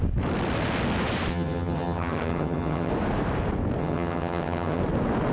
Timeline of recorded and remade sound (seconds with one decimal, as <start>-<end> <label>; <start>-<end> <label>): 0.0-1.3 recorded; 1.3-2.9 remade; 2.9-3.8 recorded; 3.8-4.8 remade; 4.8-5.3 recorded